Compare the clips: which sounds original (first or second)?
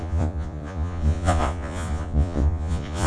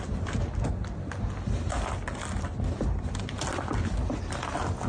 second